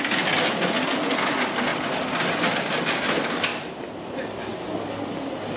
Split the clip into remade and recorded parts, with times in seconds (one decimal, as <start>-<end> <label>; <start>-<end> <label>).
0.0-5.6 recorded